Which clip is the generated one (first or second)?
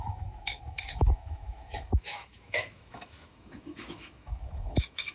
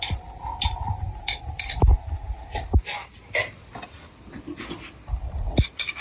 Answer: first